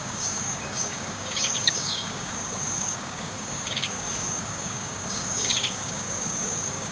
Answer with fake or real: fake